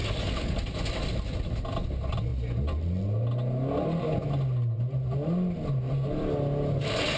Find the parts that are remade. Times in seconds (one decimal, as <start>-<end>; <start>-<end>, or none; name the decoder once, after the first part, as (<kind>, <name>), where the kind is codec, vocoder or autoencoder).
none